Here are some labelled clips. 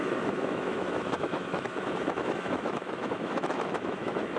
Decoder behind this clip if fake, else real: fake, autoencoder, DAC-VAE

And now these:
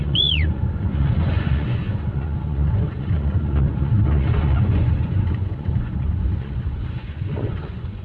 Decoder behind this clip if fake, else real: fake, vocoder, Vocos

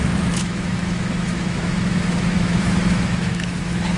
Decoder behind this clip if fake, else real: fake, autoencoder, DAC-VAE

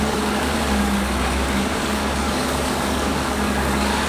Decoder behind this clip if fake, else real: fake, codec, DAC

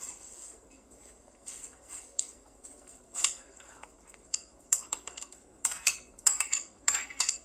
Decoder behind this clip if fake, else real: fake, codec, SNAC